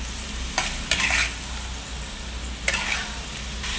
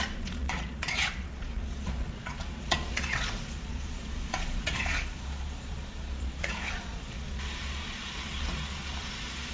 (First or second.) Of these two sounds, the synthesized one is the second